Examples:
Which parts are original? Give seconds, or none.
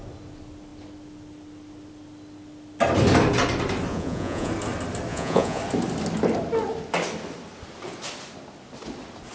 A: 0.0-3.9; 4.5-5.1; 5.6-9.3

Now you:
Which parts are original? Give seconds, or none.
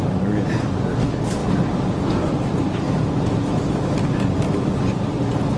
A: 0.0-5.6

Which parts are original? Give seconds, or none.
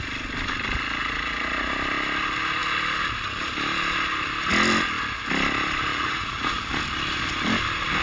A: 0.0-1.0; 1.7-5.9; 6.7-8.0